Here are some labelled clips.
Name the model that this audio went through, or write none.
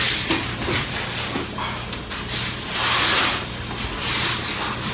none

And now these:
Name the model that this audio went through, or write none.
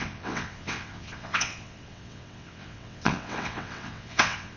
vocoder, WaveNeXt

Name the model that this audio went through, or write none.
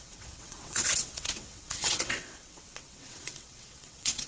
vocoder, WaveNeXt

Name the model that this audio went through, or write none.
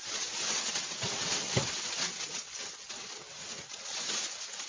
vocoder, WaveNeXt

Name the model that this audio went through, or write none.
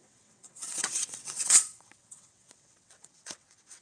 vocoder, WaveNeXt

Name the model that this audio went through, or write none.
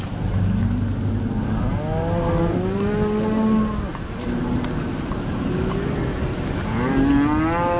none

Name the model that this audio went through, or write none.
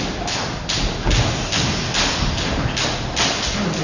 none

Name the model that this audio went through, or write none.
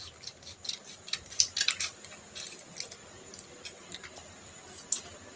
none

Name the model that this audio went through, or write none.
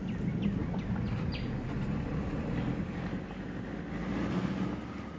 none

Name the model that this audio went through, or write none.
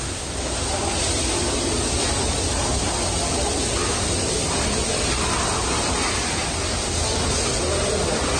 none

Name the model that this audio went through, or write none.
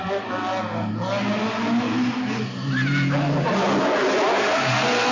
none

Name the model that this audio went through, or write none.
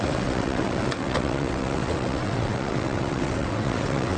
vocoder, WaveNeXt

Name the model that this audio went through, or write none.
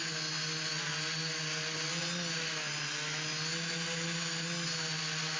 none